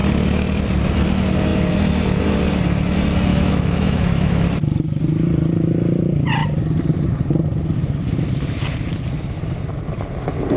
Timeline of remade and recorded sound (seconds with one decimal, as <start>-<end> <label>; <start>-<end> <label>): 0.0-3.3 recorded; 3.3-4.6 remade; 4.6-10.6 recorded